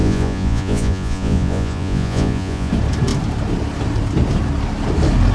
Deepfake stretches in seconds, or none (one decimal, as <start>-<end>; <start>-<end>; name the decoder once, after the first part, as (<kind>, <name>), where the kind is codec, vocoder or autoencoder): 0.0-2.7 (vocoder, Vocos)

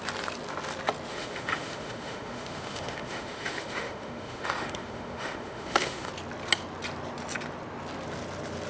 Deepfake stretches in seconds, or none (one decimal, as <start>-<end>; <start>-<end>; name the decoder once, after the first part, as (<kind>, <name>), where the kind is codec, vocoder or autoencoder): 1.1-6.1 (autoencoder, DAC-VAE)

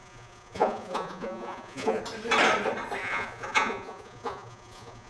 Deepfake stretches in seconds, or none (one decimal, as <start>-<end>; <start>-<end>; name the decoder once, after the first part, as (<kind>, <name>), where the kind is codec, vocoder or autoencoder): 0.0-2.0 (vocoder, Vocos); 3.0-5.1